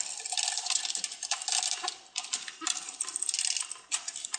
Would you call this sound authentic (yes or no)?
yes